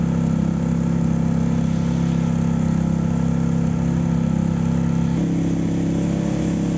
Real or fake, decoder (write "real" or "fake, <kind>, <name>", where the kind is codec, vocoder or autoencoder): real